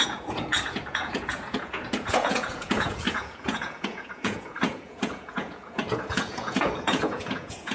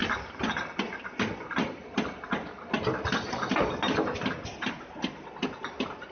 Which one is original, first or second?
second